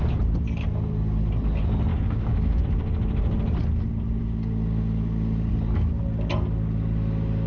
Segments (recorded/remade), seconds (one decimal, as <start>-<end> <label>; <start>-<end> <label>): 0.0-1.9 recorded; 1.9-2.6 remade; 2.6-4.2 recorded; 4.2-5.5 remade; 5.5-7.5 recorded